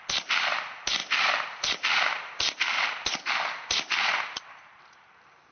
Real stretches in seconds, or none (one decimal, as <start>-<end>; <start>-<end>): 0.0-5.5